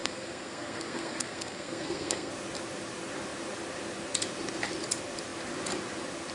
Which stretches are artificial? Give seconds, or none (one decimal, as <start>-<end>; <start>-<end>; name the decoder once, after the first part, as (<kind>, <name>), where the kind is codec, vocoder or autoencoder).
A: 0.0-2.3 (codec, SNAC)